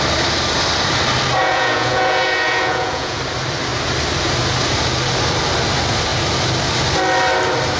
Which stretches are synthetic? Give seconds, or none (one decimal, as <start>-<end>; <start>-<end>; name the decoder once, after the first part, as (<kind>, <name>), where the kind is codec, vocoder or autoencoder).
1.4-3.2 (vocoder, Vocos)